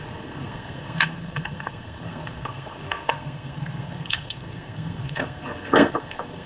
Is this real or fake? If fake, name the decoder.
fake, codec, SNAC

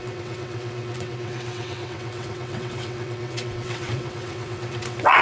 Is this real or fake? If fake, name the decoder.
fake, vocoder, WaveNeXt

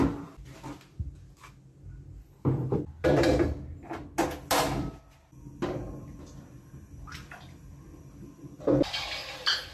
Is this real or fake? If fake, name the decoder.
real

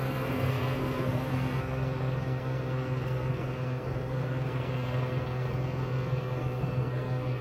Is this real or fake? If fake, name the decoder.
fake, codec, SNAC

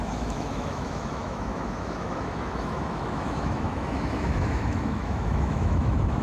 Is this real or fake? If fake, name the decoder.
fake, autoencoder, DAC-VAE